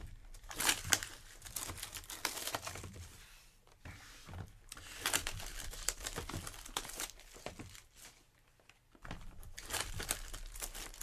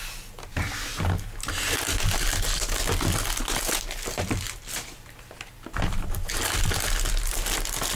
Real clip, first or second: second